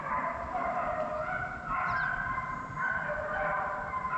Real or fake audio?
real